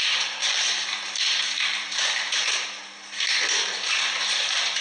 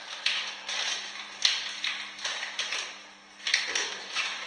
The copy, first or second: first